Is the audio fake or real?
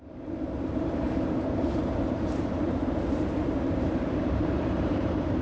fake